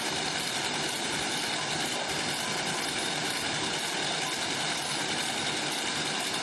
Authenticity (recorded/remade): recorded